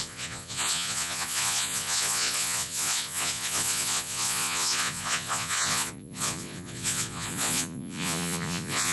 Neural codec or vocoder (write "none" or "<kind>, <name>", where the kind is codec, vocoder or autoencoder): vocoder, Vocos